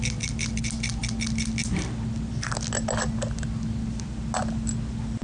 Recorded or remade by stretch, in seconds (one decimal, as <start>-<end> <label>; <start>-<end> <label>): 0.0-5.2 recorded

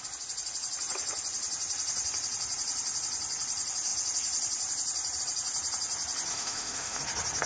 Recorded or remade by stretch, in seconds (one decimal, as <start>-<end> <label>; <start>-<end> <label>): 0.0-6.3 recorded; 6.3-7.0 remade; 7.0-7.5 recorded

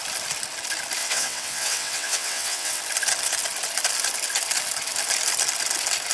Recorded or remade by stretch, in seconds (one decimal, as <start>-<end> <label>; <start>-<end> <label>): 0.0-1.0 recorded; 1.0-2.8 remade; 2.8-6.1 recorded

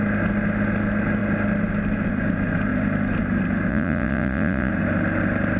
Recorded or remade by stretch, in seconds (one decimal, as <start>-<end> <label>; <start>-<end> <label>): 0.0-3.7 recorded; 3.7-4.7 remade; 4.7-5.6 recorded

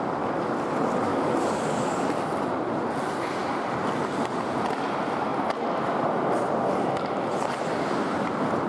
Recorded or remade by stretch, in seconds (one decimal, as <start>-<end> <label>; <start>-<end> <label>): 0.0-1.1 recorded; 1.1-2.1 remade; 2.1-8.7 recorded

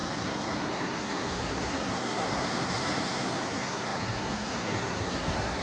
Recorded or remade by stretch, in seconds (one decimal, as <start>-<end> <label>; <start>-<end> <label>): 0.0-5.6 remade